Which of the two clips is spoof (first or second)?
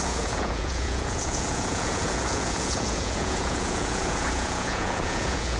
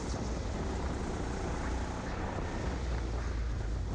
first